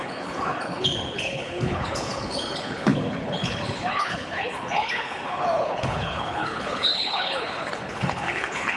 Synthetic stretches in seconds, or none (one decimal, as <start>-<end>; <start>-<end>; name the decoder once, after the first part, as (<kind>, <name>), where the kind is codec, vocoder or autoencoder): 0.0-8.8 (codec, HILCodec)